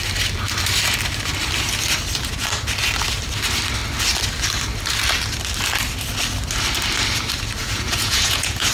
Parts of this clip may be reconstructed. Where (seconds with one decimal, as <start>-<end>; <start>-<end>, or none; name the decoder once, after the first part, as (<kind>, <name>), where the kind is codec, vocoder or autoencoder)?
7.6-8.7 (vocoder, Vocos)